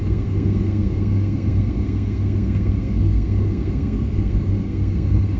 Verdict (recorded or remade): remade